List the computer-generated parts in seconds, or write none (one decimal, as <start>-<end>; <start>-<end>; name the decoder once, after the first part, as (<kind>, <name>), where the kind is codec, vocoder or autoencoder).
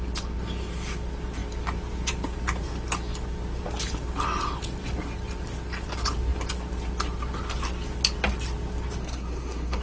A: 9.0-9.8 (codec, SNAC)